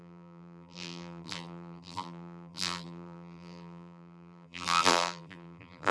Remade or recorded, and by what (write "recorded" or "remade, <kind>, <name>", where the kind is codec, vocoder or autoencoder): remade, vocoder, BigVGAN v2